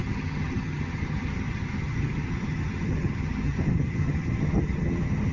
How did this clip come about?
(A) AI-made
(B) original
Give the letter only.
A